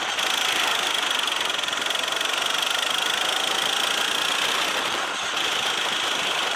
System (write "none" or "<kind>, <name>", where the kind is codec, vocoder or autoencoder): none